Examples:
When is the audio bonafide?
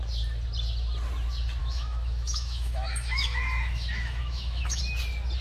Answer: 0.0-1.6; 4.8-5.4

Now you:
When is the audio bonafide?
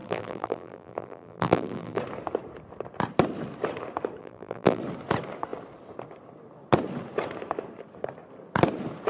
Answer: 2.0-4.2; 4.8-9.1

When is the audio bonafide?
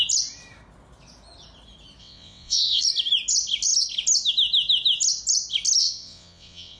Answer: 0.0-2.0; 2.8-5.8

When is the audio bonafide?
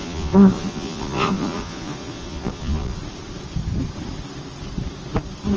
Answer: 3.0-5.6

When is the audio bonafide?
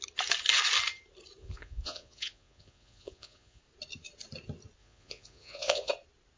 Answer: 0.0-1.4; 3.6-4.8; 5.9-6.4